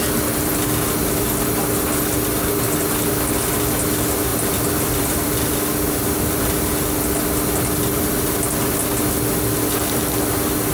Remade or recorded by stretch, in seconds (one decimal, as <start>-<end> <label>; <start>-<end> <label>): 0.0-4.3 recorded; 4.3-7.0 remade; 7.0-10.7 recorded